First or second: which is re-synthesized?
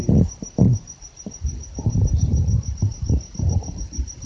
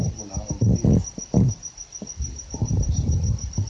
first